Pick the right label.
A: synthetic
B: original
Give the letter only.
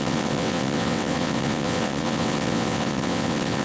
A